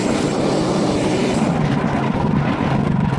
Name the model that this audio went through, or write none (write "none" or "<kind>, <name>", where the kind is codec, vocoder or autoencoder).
none